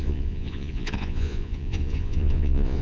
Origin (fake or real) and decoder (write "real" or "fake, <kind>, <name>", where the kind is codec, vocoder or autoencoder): fake, vocoder, Vocos